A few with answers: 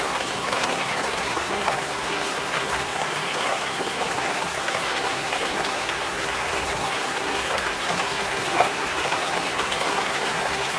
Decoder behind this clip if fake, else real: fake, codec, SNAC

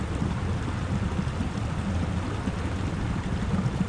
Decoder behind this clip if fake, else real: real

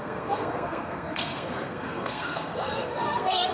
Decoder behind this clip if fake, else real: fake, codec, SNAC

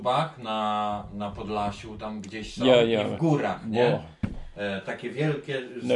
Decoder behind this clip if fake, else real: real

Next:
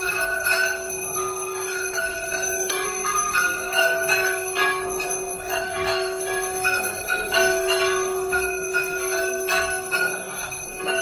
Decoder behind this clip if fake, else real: fake, codec, SNAC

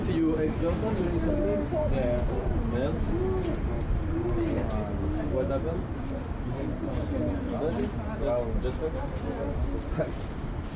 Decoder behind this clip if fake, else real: real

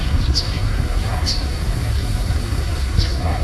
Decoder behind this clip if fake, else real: fake, codec, SNAC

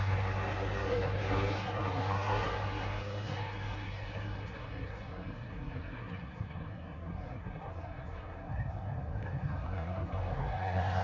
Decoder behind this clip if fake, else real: fake, codec, SNAC